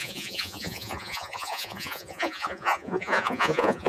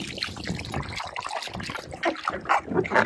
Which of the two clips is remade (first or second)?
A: first